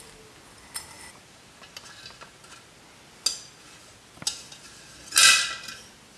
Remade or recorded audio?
recorded